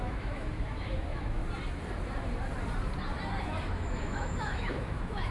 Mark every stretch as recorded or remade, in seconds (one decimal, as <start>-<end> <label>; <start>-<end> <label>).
0.0-1.4 remade; 1.4-3.7 recorded; 3.7-5.3 remade